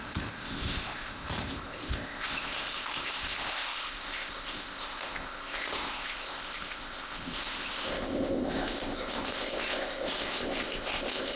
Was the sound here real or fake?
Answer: fake